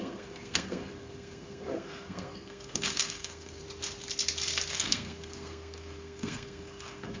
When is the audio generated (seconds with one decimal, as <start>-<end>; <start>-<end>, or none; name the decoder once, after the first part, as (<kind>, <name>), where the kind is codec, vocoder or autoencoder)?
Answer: 0.0-3.6 (codec, SNAC); 4.7-7.2